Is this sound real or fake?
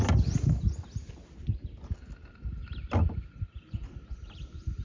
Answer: real